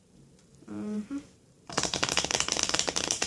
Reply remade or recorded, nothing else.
remade